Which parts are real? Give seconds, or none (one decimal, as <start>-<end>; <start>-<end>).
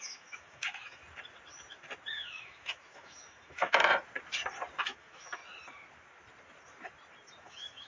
1.0-2.1; 3.9-4.8; 5.4-7.4